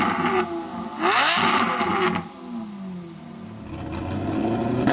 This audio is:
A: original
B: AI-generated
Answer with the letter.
A